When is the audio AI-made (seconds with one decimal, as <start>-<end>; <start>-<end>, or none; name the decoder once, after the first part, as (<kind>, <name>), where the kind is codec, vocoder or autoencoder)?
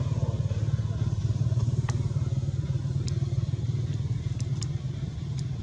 1.2-2.8 (vocoder, BigVGAN v2); 4.5-5.6